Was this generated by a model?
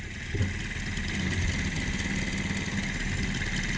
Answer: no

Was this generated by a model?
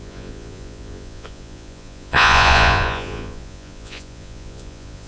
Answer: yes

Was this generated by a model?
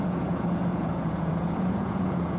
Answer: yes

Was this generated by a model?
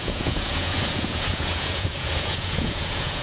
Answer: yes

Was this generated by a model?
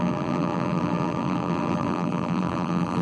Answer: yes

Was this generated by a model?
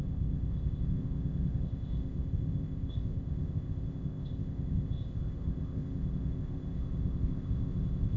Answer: yes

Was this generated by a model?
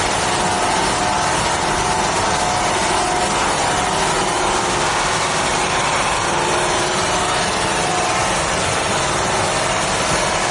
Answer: no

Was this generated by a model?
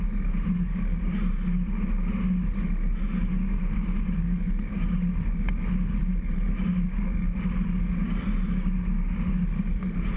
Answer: no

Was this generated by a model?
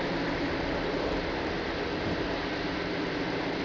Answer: no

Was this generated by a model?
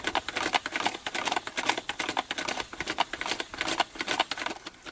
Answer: no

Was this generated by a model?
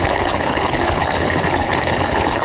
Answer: yes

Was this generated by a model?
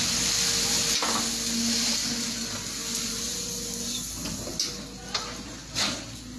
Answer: no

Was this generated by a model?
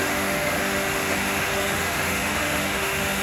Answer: yes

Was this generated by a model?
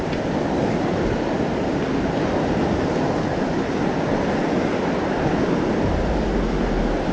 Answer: no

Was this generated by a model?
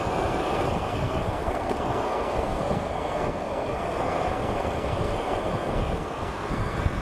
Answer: yes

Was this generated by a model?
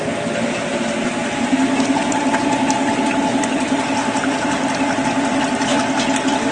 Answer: no